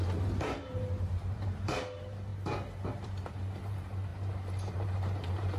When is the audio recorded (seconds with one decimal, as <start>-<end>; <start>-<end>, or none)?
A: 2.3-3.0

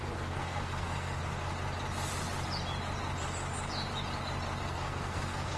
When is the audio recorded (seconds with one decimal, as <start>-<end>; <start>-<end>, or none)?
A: 1.2-4.6

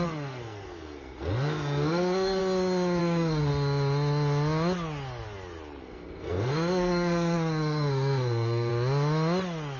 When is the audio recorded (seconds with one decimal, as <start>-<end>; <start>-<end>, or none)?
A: 2.4-3.0; 3.5-5.8; 8.7-9.8

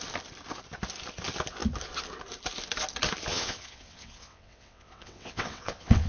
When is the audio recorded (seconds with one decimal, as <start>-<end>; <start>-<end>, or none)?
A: 0.0-3.3

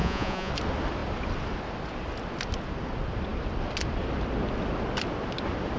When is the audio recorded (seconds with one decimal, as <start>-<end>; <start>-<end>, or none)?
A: 0.5-5.8

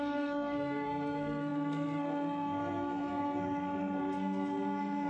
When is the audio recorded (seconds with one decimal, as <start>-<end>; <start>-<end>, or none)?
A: none

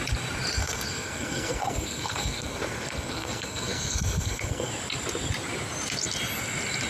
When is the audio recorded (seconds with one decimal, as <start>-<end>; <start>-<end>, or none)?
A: 0.0-0.6; 4.7-6.9